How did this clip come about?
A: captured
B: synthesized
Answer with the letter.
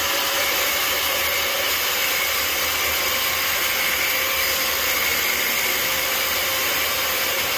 B